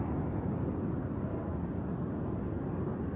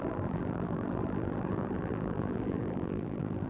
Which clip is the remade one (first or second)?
second